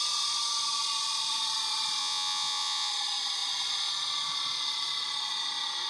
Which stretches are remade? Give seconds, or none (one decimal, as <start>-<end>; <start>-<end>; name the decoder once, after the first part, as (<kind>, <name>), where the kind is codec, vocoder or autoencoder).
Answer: 2.0-2.9 (vocoder, Vocos)